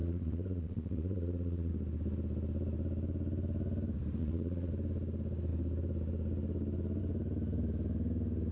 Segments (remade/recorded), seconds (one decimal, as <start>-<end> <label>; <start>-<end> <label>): 0.0-1.7 remade; 1.7-4.2 recorded; 4.2-4.7 remade; 4.7-8.5 recorded